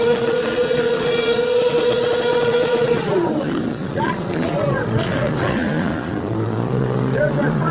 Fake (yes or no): yes